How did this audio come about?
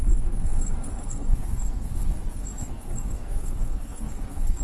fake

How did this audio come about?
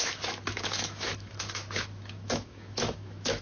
fake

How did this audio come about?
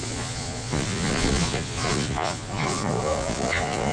fake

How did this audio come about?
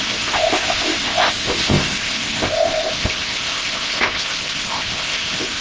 fake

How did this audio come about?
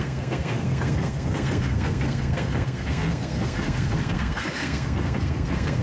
fake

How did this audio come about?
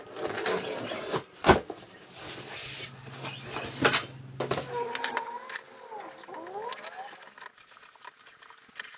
real